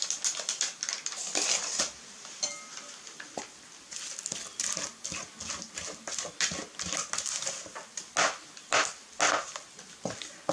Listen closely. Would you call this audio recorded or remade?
recorded